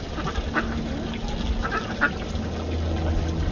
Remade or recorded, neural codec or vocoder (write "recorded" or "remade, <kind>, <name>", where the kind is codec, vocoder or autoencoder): recorded